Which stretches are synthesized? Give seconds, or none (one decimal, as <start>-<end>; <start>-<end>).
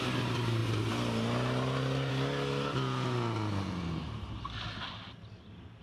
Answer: none